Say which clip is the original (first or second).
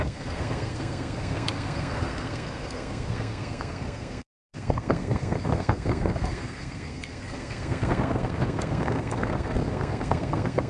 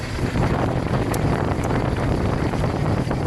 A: second